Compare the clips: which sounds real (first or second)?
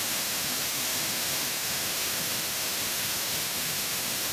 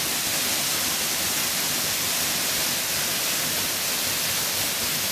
second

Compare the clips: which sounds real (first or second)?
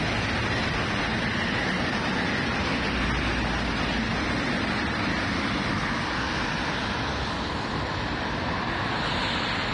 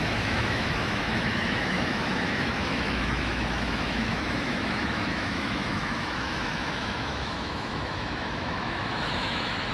first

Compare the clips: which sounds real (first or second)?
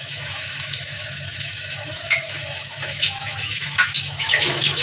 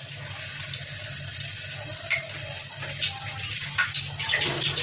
second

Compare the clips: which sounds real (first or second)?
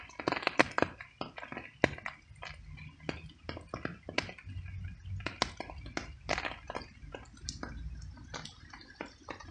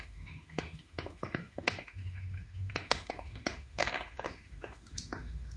first